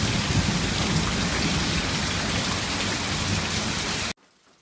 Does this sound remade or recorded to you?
recorded